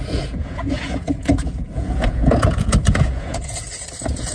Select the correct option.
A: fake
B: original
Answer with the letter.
A